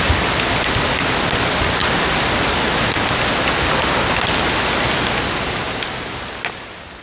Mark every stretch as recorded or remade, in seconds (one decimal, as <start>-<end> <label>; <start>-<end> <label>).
0.0-7.0 recorded